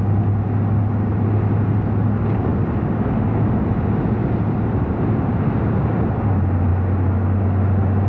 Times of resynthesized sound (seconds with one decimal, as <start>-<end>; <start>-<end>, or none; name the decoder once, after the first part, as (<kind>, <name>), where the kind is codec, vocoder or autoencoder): none